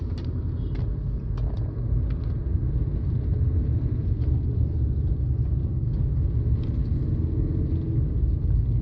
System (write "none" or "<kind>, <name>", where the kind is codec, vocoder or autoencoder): none